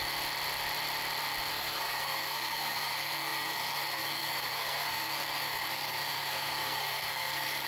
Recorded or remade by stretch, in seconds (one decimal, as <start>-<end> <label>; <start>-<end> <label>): 0.0-1.5 recorded; 1.5-7.7 remade